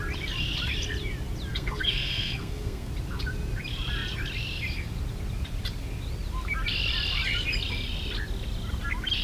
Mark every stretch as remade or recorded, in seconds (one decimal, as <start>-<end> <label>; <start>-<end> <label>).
0.0-1.5 recorded; 1.5-2.9 remade; 2.9-9.2 recorded